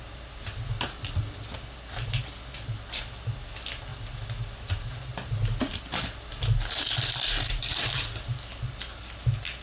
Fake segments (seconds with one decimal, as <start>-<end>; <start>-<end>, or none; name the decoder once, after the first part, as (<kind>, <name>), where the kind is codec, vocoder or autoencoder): none